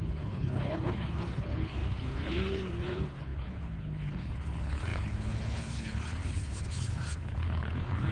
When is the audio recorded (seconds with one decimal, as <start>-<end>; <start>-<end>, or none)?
none